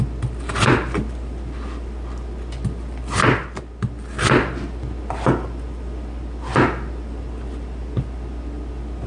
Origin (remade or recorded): recorded